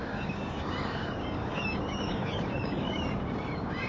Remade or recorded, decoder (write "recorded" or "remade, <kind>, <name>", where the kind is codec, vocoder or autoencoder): remade, codec, DAC